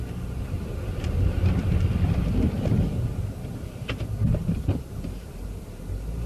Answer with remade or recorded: recorded